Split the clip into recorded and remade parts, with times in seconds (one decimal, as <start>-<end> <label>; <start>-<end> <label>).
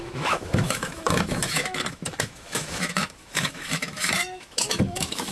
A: 0.0-5.3 remade